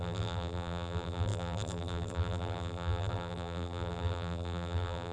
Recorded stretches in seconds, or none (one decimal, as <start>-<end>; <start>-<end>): none